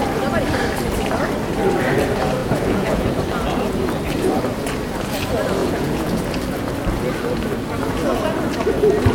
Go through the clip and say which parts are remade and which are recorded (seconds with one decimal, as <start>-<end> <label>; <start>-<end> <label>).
0.0-2.4 recorded; 2.4-3.2 remade; 3.2-5.6 recorded; 5.6-6.2 remade; 6.2-9.1 recorded